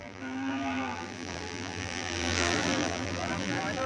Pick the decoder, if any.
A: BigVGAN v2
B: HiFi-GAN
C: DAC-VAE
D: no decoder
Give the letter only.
A